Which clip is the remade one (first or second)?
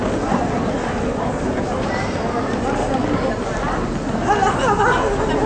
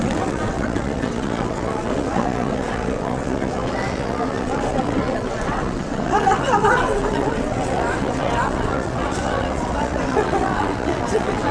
second